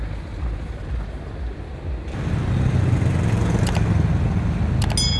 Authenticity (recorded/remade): recorded